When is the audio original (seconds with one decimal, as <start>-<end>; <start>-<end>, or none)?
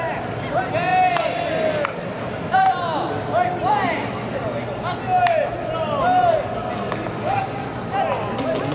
0.0-8.7